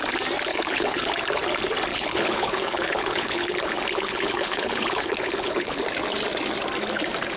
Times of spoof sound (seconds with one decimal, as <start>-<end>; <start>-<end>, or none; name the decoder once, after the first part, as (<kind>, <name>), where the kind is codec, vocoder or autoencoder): 0.5-1.1 (codec, HILCodec); 1.9-5.8